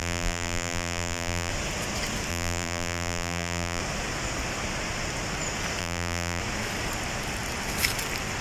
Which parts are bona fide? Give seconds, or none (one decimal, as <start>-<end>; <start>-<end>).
1.5-2.3; 3.8-5.8; 6.4-8.4